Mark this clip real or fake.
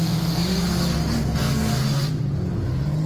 real